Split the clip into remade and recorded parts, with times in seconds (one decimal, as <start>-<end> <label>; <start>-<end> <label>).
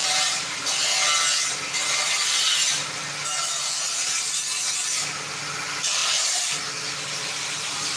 0.0-0.6 remade; 0.6-6.0 recorded; 6.0-6.6 remade; 6.6-8.0 recorded